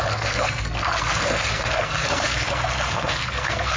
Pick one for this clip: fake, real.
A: fake